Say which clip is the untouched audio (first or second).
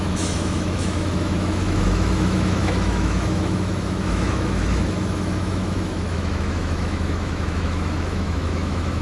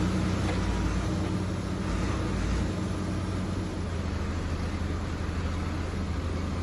second